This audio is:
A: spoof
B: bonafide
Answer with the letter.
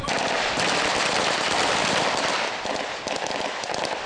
B